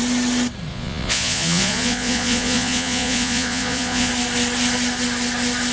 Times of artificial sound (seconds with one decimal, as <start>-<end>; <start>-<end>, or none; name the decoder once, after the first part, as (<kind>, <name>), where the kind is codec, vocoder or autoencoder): 0.7-4.1 (vocoder, Vocos)